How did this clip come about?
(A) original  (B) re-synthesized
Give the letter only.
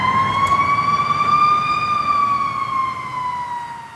A